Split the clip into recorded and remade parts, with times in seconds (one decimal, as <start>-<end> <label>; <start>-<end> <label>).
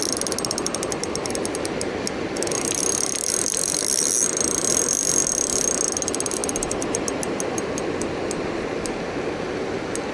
0.0-10.1 recorded